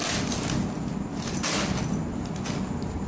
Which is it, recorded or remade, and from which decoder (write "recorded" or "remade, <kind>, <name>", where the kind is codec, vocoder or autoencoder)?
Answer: recorded